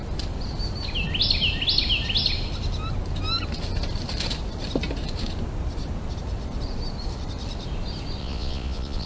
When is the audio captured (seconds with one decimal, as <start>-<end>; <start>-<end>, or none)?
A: 0.0-8.2